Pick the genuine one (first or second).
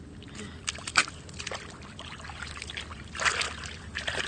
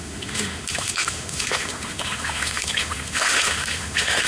first